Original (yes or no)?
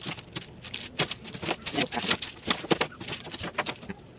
yes